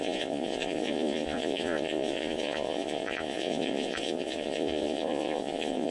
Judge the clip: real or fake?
fake